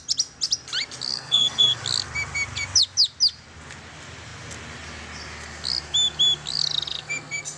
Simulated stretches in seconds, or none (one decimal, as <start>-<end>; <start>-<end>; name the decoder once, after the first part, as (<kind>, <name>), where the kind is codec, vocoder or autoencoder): 1.1-1.8 (codec, SNAC)